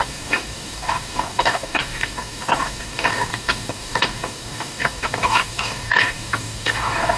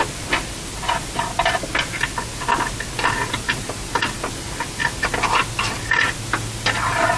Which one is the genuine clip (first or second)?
second